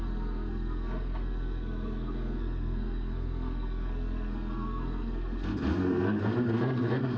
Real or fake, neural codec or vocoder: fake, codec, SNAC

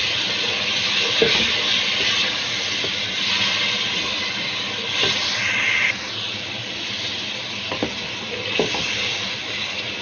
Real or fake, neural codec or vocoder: real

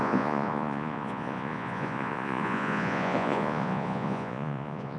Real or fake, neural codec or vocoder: fake, vocoder, Vocos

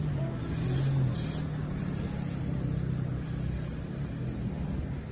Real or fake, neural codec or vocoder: real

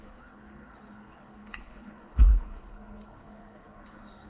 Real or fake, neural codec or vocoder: fake, codec, HILCodec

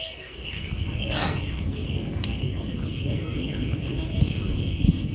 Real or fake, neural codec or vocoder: fake, codec, SNAC